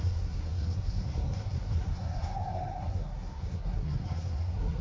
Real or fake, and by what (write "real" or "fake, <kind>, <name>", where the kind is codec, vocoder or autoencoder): fake, codec, SNAC